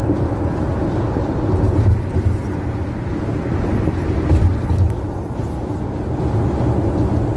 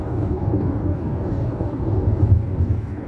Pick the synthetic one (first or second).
second